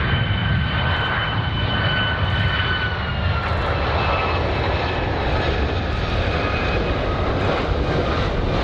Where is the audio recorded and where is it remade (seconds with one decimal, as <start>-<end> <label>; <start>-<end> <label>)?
0.0-8.6 recorded